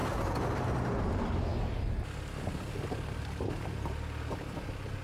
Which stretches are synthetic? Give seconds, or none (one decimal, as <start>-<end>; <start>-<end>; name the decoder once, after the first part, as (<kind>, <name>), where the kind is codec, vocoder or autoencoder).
none